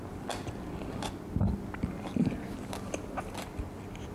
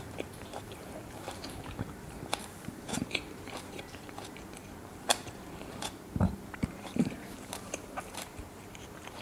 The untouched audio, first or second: first